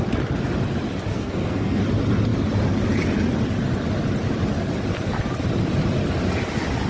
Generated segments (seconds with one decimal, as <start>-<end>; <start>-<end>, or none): 1.1-1.8